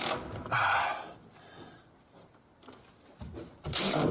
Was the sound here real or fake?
real